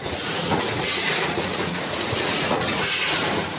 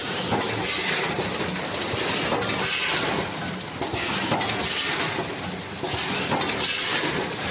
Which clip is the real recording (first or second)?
second